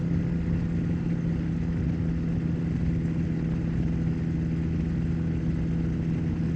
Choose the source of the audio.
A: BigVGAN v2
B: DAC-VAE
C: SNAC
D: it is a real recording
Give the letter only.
D